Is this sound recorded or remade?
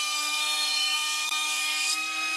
remade